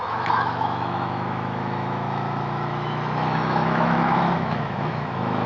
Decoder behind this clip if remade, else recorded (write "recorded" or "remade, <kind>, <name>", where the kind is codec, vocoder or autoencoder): remade, autoencoder, DAC-VAE